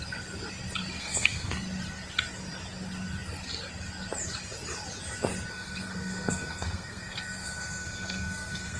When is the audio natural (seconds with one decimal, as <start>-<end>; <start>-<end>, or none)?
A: 0.0-1.0; 1.5-5.5